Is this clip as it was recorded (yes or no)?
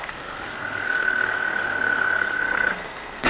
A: no